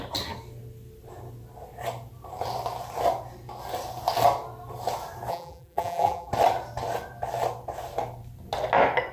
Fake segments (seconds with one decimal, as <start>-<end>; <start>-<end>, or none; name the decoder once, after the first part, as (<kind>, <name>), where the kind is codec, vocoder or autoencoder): 5.3-6.3 (vocoder, BigVGAN v2)